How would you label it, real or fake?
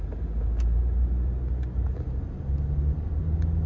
real